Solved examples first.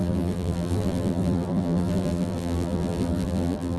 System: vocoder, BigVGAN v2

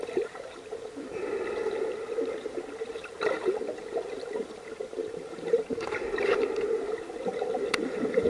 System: vocoder, BigVGAN v2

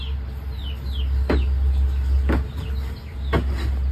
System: none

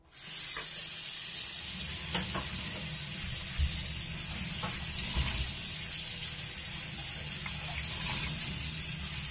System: none